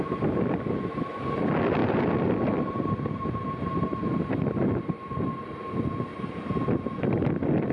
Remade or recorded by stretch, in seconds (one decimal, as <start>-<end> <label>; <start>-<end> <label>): 0.0-1.8 recorded; 1.8-6.0 remade; 6.0-7.7 recorded